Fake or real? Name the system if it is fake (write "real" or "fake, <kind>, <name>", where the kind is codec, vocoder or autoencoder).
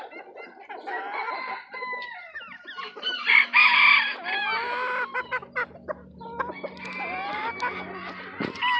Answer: real